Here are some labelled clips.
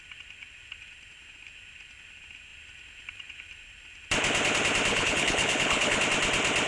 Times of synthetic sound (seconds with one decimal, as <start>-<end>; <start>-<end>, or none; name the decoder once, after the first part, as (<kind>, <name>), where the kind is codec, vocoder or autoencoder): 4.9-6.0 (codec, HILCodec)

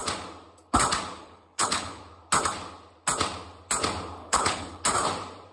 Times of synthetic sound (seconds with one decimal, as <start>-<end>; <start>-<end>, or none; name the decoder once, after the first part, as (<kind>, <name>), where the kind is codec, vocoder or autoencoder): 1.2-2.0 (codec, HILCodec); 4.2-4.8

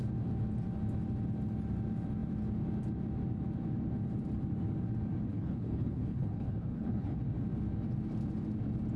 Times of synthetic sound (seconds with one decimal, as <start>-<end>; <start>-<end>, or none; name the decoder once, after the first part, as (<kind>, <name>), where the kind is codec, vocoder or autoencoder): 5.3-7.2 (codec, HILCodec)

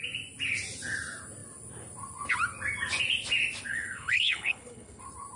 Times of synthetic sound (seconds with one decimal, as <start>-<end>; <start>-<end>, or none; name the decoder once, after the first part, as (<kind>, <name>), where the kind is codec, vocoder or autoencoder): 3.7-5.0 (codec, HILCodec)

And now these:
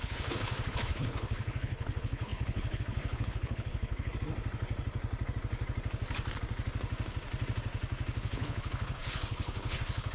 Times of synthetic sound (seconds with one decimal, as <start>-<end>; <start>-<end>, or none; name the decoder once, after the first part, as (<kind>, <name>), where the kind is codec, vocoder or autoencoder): 0.0-4.1 (codec, HILCodec); 8.2-10.1

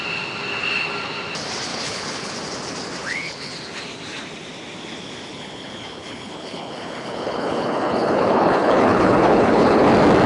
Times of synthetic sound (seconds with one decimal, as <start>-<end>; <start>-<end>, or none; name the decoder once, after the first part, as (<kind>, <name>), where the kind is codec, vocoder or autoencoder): 1.7-2.3 (codec, HILCodec); 3.0-3.5; 5.3-9.9

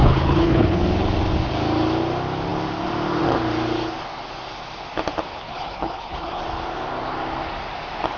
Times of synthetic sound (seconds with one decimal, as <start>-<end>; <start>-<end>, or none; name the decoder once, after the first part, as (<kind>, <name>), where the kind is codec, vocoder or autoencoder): 0.0-0.8 (codec, HILCodec); 5.3-6.4